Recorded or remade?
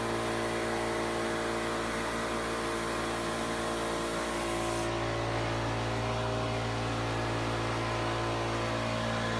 recorded